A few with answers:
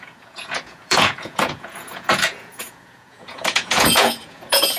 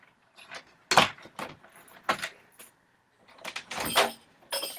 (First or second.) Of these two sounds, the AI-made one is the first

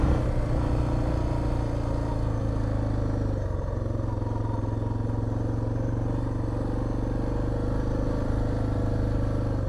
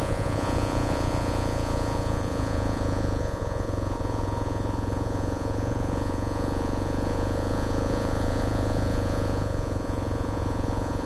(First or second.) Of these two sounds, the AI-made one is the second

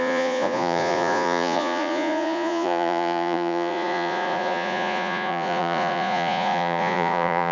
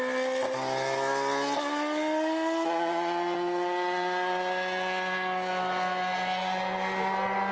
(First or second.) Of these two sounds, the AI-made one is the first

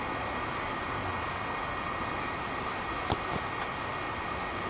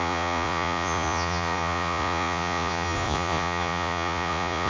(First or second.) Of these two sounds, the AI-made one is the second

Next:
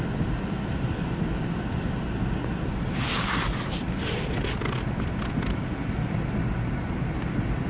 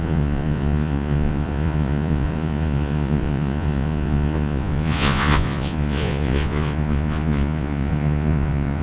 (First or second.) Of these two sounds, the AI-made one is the second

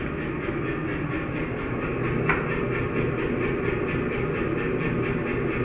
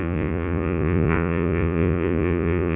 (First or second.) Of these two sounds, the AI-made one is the second